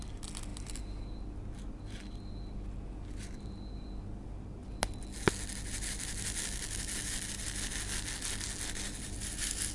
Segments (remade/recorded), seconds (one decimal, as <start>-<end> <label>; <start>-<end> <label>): 0.0-9.7 recorded